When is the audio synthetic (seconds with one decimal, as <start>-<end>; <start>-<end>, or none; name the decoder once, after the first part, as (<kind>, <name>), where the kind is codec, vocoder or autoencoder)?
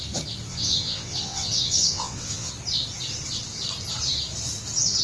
0.5-2.5 (vocoder, WaveNeXt)